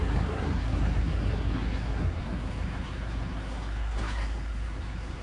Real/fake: fake